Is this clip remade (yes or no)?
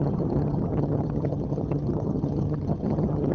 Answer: yes